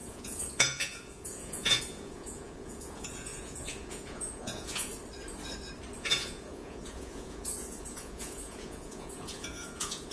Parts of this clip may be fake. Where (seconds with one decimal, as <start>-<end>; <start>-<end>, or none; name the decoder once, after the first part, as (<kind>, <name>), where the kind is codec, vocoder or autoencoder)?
0.0-4.9 (vocoder, Vocos); 6.0-10.1